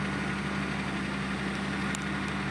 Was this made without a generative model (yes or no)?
yes